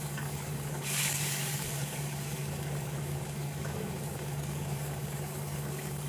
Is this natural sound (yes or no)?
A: no